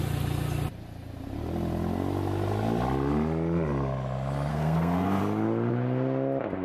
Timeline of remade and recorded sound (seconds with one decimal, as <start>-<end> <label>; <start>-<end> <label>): 0.0-4.5 recorded; 4.5-5.2 remade; 5.2-6.6 recorded